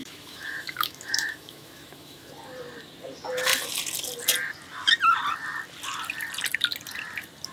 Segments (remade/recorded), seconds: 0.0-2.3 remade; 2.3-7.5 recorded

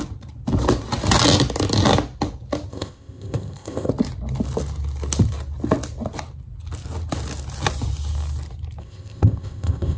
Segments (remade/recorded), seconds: 0.0-2.7 recorded; 2.7-3.9 remade; 3.9-8.8 recorded; 8.8-10.0 remade